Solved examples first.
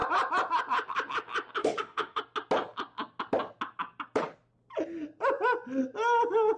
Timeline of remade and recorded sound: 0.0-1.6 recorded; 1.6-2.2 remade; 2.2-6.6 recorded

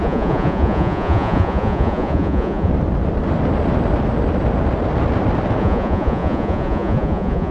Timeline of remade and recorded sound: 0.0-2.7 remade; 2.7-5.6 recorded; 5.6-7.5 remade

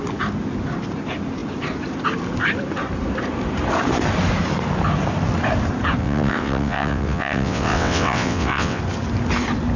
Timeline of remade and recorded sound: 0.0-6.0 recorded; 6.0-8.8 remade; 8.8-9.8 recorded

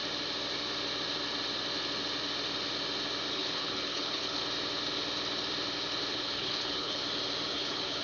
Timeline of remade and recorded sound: 0.0-3.3 recorded; 3.3-4.4 remade; 4.4-6.1 recorded; 6.1-7.0 remade; 7.0-7.5 recorded; 7.5-8.0 remade

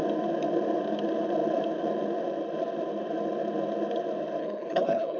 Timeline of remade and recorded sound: 0.0-4.4 recorded; 4.4-5.2 remade

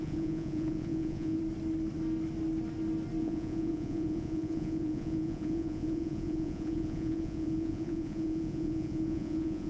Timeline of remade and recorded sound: 0.0-1.4 remade; 1.4-3.2 recorded; 3.2-9.7 remade